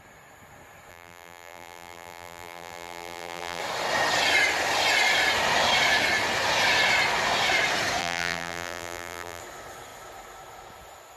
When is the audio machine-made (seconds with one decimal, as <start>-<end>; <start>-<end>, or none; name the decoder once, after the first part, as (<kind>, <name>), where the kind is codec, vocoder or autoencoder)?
0.9-3.6 (vocoder, BigVGAN v2); 8.0-9.4